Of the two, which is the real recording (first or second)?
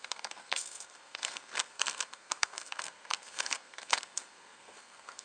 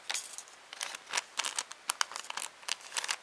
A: second